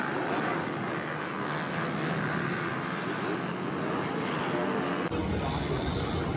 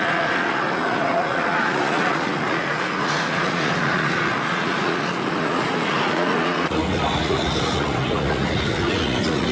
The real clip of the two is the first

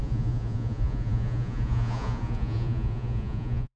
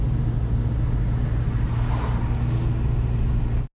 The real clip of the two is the second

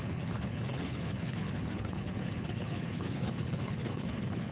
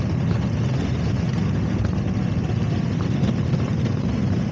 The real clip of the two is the second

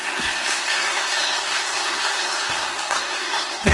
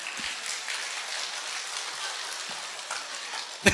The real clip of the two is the second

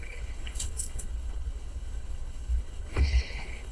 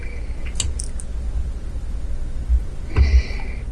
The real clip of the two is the second